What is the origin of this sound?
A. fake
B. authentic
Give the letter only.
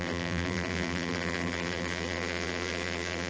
A